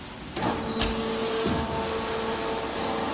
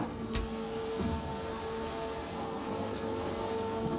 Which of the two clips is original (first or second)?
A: first